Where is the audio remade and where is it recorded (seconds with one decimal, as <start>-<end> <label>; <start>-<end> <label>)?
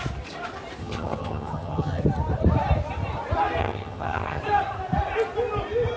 0.0-0.8 recorded; 0.8-2.0 remade; 2.0-3.6 recorded; 3.6-4.4 remade; 4.4-6.0 recorded